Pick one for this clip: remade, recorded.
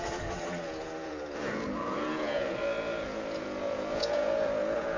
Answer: remade